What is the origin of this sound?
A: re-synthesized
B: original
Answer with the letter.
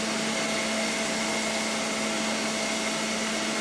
B